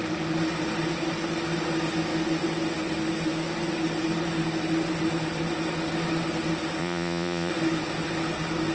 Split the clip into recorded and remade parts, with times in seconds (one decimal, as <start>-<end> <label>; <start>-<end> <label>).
0.0-6.8 recorded; 6.8-7.5 remade; 7.5-8.7 recorded